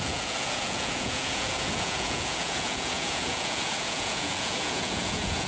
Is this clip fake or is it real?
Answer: fake